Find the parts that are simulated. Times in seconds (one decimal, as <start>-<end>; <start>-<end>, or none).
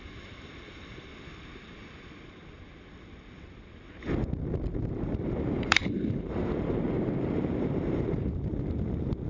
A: 0.0-1.1; 4.9-8.5